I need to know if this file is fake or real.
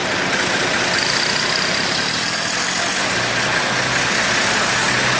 real